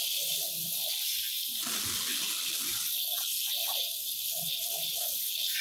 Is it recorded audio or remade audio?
recorded